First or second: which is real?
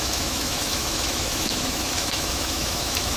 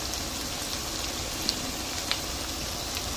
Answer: second